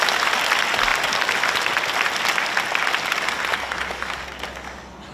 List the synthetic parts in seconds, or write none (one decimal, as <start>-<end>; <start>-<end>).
3.5-4.2